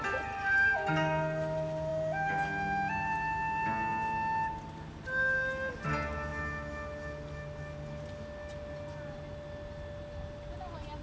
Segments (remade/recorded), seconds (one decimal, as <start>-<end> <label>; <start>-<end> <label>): 0.0-11.0 recorded